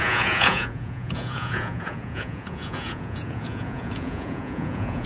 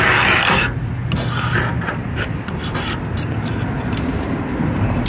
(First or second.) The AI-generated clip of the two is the first